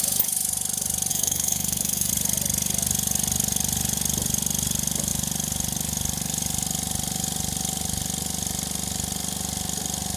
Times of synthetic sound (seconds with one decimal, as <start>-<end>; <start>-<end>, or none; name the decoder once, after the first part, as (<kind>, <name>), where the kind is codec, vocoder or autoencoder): 1.1-2.1 (codec, SNAC)